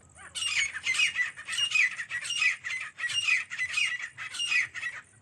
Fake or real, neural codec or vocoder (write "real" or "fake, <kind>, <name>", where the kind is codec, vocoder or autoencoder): real